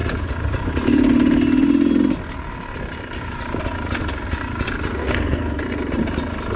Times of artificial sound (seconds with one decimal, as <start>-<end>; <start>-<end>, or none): 5.0-5.6